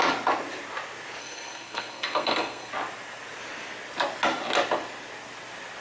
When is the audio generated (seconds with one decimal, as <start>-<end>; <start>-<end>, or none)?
1.2-2.7